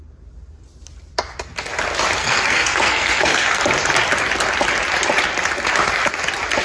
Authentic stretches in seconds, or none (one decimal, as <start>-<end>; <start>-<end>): 0.0-2.2; 3.6-6.6